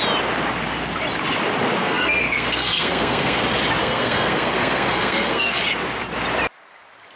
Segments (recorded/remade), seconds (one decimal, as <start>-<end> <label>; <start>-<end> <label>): 0.0-1.8 recorded; 1.8-3.4 remade; 3.4-3.8 recorded; 3.8-5.6 remade; 5.6-7.2 recorded